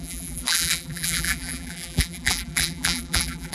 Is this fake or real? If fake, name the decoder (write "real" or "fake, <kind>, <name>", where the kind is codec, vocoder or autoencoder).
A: fake, vocoder, BigVGAN v2